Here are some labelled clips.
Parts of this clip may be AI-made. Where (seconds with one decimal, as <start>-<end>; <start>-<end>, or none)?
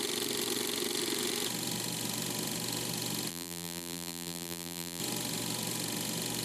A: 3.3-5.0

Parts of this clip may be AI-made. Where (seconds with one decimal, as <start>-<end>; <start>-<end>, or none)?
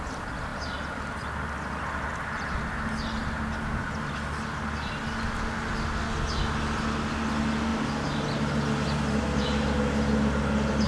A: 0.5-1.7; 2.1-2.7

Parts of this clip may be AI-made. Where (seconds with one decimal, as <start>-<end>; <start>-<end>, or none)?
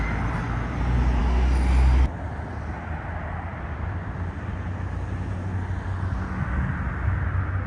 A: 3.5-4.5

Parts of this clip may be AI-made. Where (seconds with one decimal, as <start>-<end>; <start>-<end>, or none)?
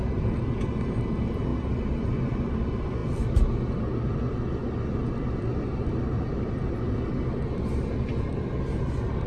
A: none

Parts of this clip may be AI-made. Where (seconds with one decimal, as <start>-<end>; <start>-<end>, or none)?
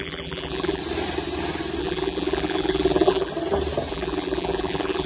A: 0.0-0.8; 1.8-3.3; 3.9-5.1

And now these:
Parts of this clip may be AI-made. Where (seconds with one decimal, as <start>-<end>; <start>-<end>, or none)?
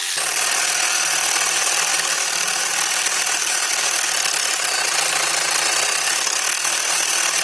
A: 1.9-3.7